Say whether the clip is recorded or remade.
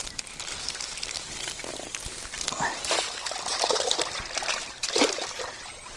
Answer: remade